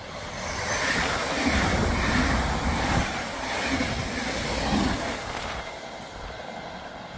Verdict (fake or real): real